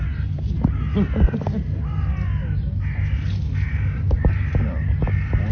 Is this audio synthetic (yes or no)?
no